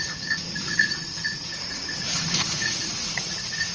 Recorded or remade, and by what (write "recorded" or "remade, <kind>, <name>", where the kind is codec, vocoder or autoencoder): remade, vocoder, Vocos